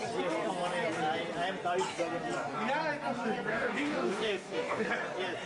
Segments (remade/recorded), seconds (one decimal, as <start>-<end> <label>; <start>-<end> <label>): 0.0-3.5 recorded; 3.5-4.9 remade; 4.9-5.5 recorded